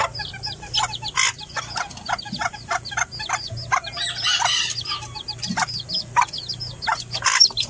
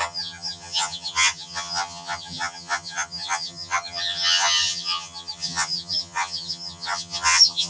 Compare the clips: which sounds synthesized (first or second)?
second